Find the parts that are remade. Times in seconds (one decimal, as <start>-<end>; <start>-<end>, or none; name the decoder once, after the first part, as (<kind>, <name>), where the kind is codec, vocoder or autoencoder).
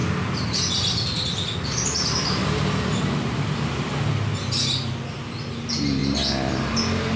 none